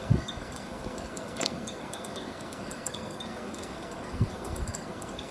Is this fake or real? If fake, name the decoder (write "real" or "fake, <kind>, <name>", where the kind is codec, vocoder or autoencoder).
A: fake, codec, SNAC